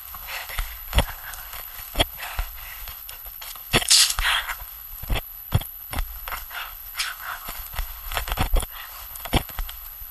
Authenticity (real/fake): fake